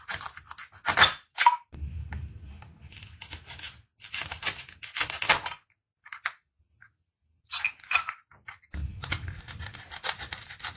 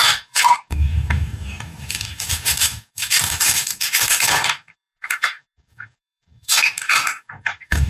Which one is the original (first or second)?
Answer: first